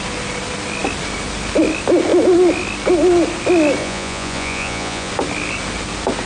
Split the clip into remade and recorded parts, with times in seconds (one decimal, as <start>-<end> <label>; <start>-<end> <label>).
0.0-3.8 recorded; 3.8-5.1 remade; 5.1-6.3 recorded